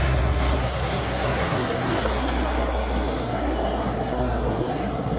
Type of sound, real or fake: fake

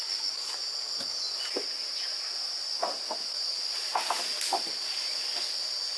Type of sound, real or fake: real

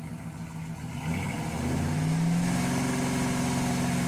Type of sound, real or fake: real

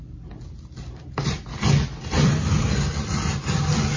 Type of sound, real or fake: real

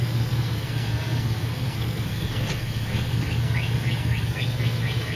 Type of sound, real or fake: fake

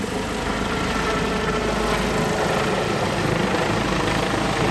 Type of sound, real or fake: real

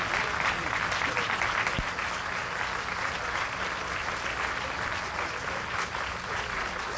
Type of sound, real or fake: real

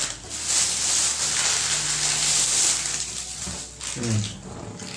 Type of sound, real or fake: real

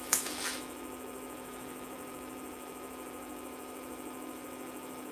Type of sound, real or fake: fake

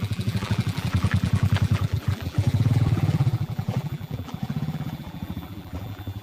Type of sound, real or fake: fake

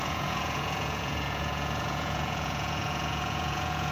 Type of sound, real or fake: fake